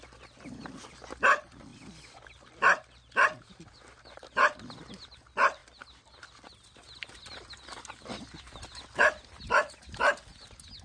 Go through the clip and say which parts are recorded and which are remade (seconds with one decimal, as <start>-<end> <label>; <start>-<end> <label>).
0.0-10.8 recorded